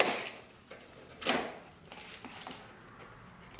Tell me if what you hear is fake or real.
real